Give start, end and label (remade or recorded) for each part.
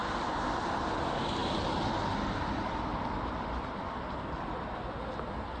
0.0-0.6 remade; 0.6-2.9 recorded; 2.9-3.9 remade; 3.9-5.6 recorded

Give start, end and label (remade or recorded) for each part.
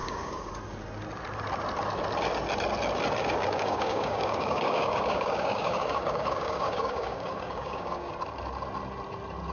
0.0-0.5 remade; 0.5-3.2 recorded; 3.2-8.1 remade; 8.1-9.5 recorded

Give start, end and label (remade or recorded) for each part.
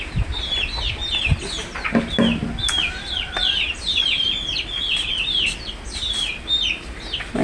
0.0-7.4 recorded